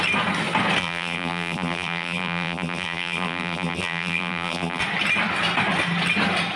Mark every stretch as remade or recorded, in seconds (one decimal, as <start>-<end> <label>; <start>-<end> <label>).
0.0-0.8 recorded; 0.8-4.8 remade; 4.8-6.6 recorded

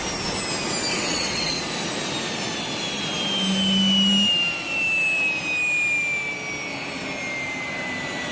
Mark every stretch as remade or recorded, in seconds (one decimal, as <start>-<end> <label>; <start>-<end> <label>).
0.0-0.9 recorded; 0.9-1.6 remade; 1.6-8.3 recorded

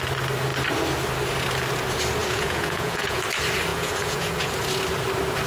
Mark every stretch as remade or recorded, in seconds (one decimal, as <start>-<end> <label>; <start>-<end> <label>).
0.0-2.2 recorded; 2.2-3.2 remade; 3.2-3.7 recorded; 3.7-4.5 remade; 4.5-5.5 recorded